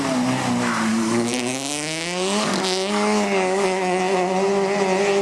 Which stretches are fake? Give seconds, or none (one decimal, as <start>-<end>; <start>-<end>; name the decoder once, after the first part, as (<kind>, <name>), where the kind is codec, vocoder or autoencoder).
0.9-4.0 (codec, DAC)